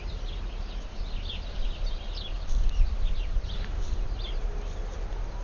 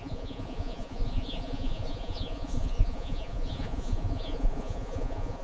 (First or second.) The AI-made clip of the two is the second